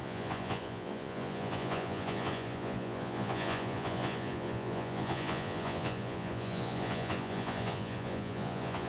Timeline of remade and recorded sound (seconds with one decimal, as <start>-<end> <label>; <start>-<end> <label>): 0.0-8.9 remade